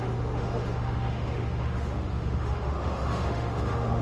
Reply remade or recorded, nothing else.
remade